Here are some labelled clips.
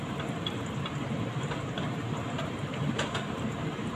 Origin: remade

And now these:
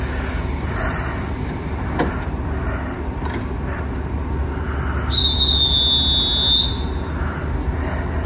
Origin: recorded